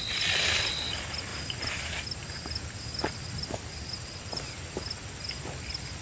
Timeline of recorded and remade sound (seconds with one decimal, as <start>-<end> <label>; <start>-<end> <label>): 0.0-6.0 recorded